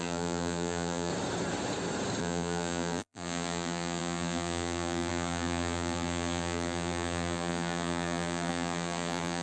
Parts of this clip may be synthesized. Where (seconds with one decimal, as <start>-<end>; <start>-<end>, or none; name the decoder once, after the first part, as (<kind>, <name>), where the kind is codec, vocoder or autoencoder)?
0.0-1.1 (vocoder, BigVGAN v2); 2.2-9.4